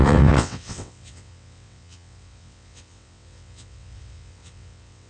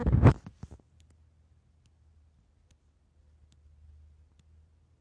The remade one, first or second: first